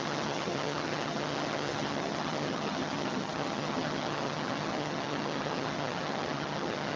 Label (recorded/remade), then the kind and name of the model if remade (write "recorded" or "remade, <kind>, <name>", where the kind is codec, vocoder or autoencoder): remade, vocoder, HiFi-GAN